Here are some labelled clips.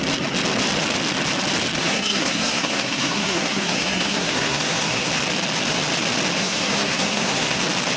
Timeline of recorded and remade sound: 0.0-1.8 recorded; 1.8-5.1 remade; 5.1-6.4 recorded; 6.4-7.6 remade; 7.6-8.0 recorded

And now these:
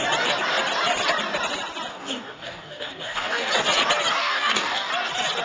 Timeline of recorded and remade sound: 0.0-1.9 recorded; 1.9-3.5 remade; 3.5-4.2 recorded; 4.2-4.9 remade; 4.9-5.4 recorded

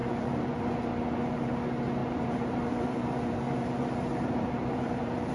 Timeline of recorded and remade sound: 0.0-0.6 remade; 0.6-2.0 recorded; 2.0-5.3 remade